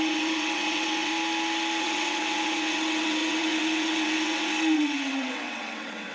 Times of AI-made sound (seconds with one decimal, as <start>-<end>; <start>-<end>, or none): 0.0-1.1; 1.8-6.1